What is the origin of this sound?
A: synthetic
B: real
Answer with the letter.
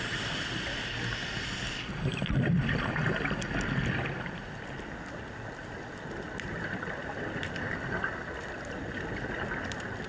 B